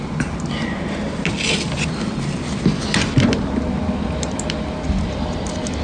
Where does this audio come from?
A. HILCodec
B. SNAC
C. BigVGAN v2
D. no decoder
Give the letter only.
D